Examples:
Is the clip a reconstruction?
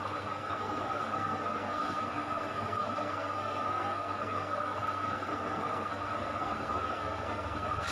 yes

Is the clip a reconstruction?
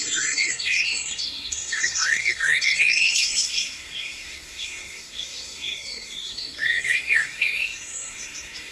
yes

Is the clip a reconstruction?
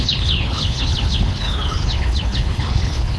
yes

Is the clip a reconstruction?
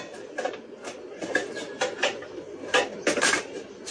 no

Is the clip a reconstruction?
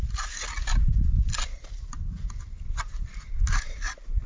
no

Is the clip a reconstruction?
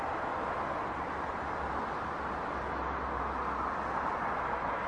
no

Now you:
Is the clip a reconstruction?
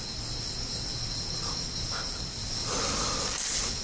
yes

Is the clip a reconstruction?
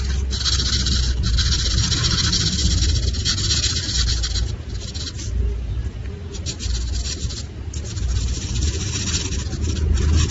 no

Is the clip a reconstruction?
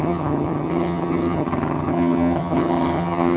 yes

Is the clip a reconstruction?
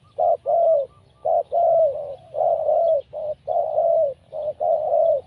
no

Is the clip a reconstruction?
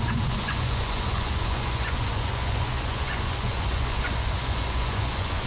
yes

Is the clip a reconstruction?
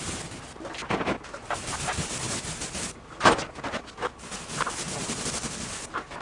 no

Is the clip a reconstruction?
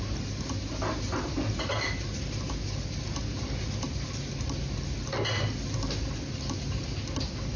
no